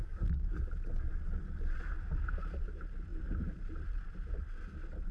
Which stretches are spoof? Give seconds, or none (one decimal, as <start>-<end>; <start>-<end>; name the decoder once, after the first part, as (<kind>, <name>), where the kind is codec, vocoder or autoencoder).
0.0-0.6 (codec, DAC)